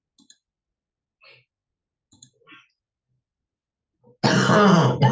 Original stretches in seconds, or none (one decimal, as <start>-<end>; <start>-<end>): 0.0-5.1

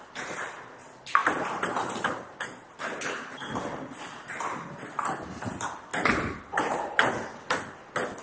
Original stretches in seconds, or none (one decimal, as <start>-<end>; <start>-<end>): 5.9-6.4; 7.3-8.2

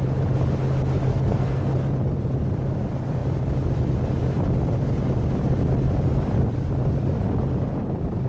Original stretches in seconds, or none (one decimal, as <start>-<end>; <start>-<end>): 0.0-1.1; 1.7-8.3

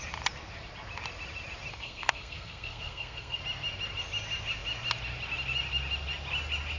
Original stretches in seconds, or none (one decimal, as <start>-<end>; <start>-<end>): 0.0-1.7; 3.4-6.8

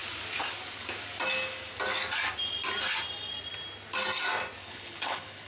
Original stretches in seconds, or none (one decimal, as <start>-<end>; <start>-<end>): 0.0-4.6